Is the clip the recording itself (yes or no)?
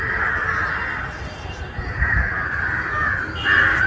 yes